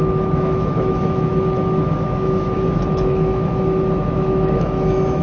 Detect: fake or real fake